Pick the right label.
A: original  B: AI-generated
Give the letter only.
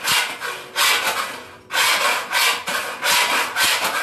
A